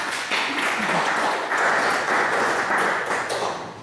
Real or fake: fake